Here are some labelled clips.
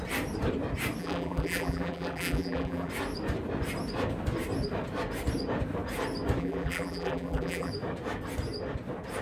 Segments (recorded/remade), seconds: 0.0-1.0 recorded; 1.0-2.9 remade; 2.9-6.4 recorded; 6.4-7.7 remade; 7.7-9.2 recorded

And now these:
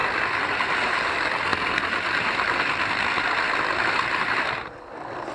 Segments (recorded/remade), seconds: 0.0-5.3 recorded

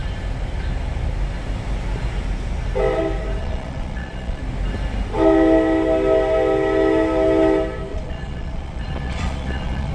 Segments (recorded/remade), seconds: 0.0-3.4 recorded; 3.4-4.4 remade; 4.4-7.9 recorded; 7.9-9.9 remade

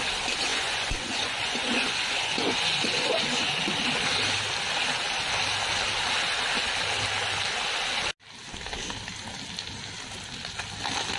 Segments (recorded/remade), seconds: 0.0-0.5 recorded; 0.5-3.5 remade; 3.5-11.2 recorded

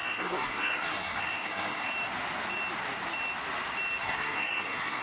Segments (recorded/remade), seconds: 0.0-1.9 remade; 1.9-4.0 recorded; 4.0-5.0 remade